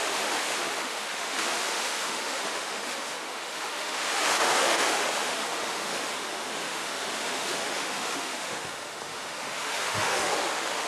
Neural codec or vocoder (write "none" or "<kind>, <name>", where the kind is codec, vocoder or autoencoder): autoencoder, DAC-VAE